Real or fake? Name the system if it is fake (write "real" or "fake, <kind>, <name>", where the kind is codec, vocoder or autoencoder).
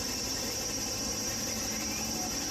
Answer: real